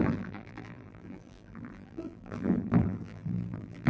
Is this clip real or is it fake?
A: fake